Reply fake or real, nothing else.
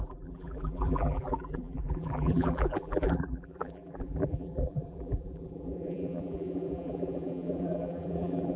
fake